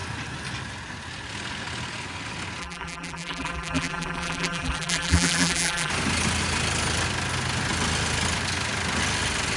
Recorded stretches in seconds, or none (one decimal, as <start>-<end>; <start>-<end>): 0.0-2.6; 5.9-9.6